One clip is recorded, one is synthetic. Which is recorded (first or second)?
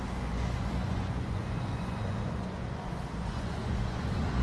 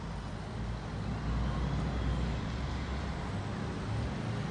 second